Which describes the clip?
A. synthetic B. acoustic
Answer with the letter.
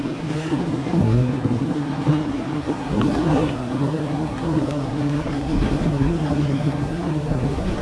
A